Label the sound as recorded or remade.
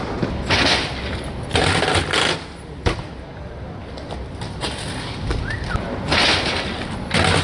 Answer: recorded